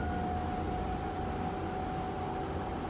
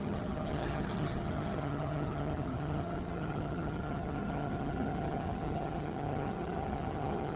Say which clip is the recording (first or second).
first